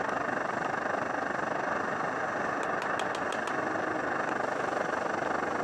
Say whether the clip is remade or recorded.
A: recorded